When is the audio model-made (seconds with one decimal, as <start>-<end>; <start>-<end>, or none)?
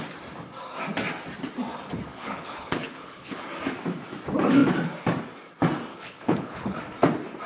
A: 2.1-3.4; 5.9-6.8